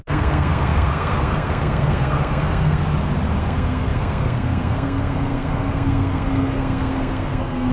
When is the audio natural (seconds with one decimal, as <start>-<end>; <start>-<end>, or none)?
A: 2.8-3.4